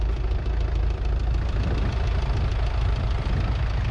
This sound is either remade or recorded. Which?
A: recorded